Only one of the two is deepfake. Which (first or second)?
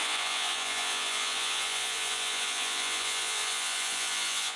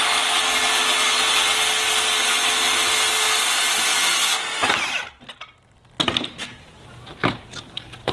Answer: first